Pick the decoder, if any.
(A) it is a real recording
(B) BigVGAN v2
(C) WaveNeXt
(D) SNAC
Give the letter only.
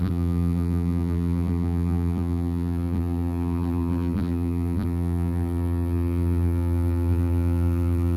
B